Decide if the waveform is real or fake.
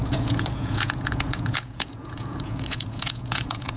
fake